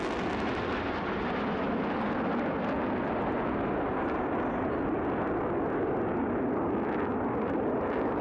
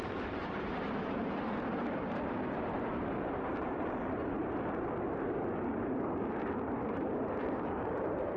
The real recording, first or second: first